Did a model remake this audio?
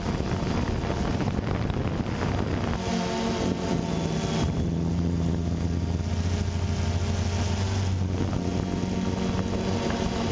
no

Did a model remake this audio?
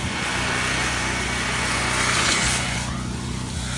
yes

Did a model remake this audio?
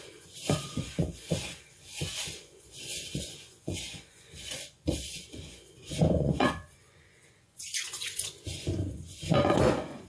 yes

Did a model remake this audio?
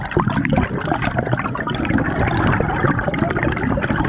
no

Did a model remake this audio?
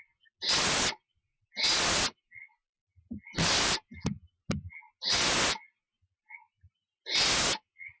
no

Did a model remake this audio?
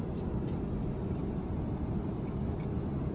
no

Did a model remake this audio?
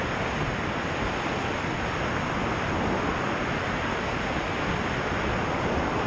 no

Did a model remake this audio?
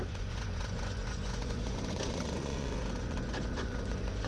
yes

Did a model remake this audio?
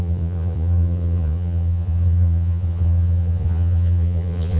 yes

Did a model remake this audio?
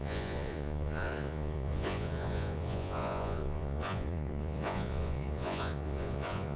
yes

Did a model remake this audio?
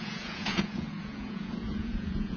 yes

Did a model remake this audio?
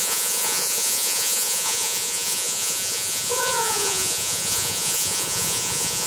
yes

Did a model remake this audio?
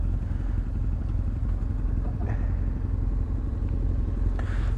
no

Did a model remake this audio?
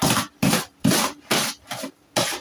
no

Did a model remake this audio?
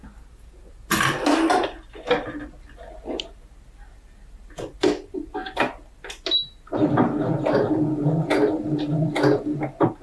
no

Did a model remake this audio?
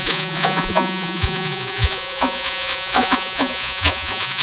yes